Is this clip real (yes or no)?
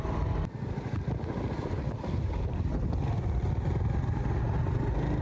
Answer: yes